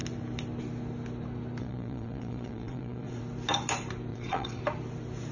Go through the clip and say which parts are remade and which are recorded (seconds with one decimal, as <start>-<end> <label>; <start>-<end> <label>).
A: 0.0-1.6 recorded; 1.6-3.2 remade; 3.2-4.1 recorded; 4.1-4.6 remade; 4.6-5.3 recorded